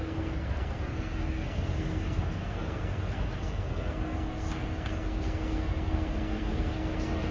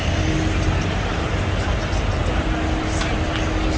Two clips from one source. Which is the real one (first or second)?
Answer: second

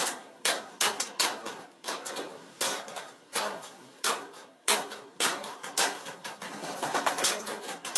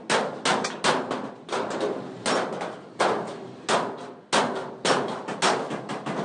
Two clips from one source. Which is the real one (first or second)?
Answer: second